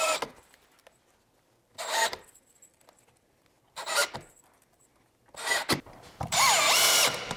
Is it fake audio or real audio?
real